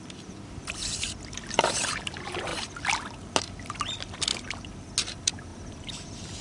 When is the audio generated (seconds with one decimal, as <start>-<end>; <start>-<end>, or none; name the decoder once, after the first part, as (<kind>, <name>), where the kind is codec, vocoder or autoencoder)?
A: 0.0-2.5 (vocoder, BigVGAN v2); 3.4-4.3; 5.0-6.4